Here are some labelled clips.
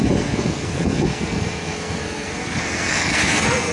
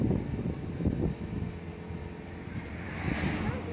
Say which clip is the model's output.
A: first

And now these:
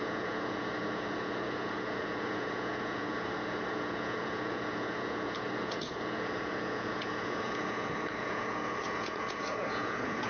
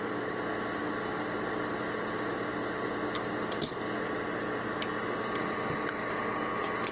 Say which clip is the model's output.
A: first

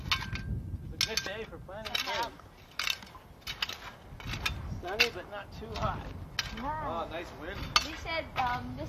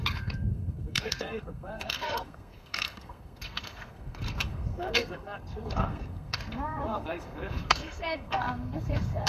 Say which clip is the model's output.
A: second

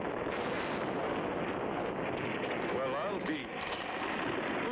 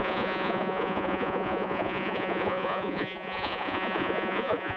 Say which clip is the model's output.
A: second